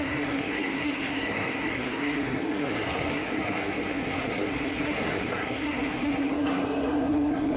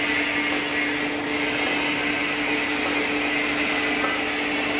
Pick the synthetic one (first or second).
first